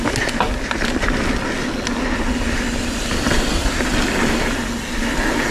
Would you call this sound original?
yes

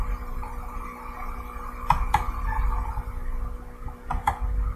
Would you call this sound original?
yes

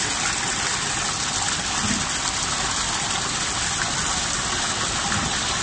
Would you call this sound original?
yes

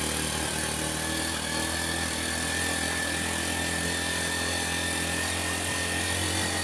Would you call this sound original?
yes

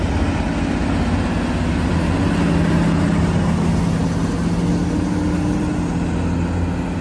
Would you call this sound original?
yes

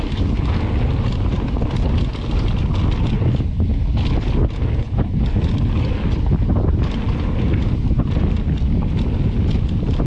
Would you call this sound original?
yes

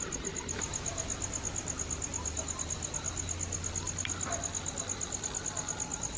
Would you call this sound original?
yes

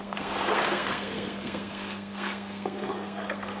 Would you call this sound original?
no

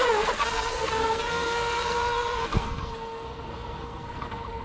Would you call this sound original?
no